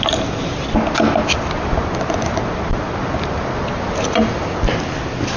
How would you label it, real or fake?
real